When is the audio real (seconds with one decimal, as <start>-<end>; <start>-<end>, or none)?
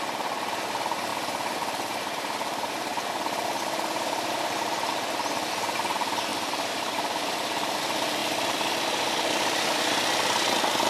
0.0-1.1; 4.9-6.3; 7.8-10.9